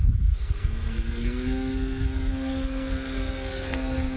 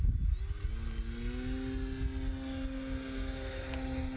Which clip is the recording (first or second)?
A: second